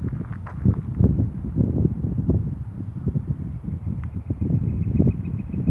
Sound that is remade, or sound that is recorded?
recorded